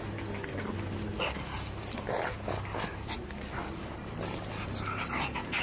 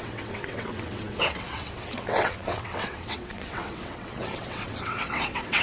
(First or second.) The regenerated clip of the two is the second